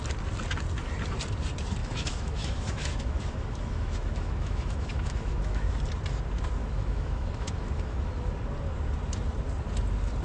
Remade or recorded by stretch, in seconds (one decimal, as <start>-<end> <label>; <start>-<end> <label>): 0.0-1.8 recorded; 1.8-5.8 remade; 5.8-6.6 recorded; 6.6-8.1 remade; 8.1-10.2 recorded